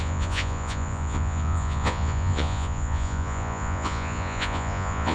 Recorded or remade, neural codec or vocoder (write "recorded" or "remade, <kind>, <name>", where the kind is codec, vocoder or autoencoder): remade, vocoder, Vocos